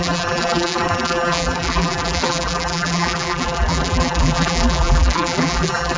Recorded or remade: remade